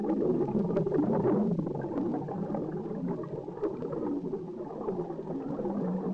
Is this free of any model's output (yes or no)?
yes